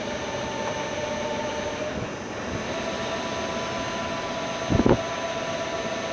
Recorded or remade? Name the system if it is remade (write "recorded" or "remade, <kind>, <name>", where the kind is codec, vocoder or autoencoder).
recorded